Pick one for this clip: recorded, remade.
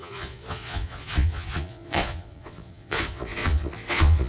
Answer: remade